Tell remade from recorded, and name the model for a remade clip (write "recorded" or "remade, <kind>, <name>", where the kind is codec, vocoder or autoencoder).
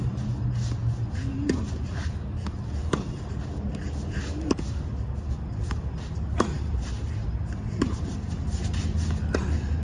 recorded